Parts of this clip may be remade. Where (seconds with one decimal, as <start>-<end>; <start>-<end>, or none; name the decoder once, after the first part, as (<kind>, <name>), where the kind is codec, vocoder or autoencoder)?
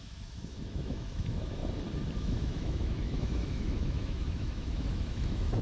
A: 0.0-1.6 (autoencoder, DAC-VAE); 2.2-5.6